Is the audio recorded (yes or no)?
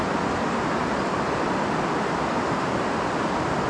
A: yes